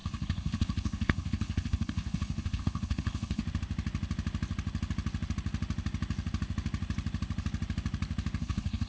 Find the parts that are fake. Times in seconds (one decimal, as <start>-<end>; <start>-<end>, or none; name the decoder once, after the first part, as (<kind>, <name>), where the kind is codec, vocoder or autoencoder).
0.0-3.4 (codec, HILCodec); 8.4-8.9